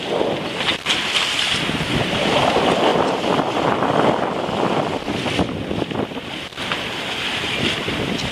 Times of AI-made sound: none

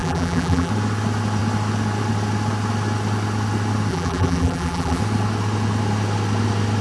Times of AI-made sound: 0.0-0.7 (vocoder, BigVGAN v2); 3.9-5.0

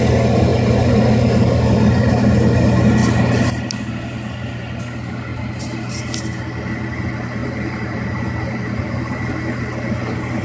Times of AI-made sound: 5.3-5.9 (vocoder, BigVGAN v2); 7.4-9.6

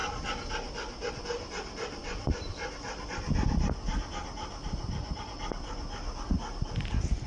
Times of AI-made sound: none